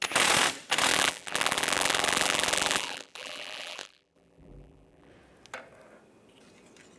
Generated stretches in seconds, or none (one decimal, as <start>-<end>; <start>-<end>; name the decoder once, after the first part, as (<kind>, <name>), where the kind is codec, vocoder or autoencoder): 0.9-5.1 (vocoder, BigVGAN v2)